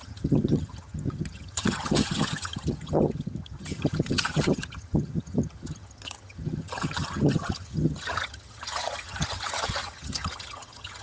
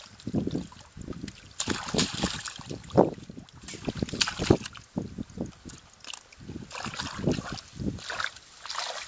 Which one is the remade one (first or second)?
first